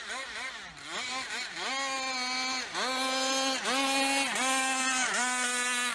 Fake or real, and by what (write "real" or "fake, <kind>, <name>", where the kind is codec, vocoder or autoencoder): real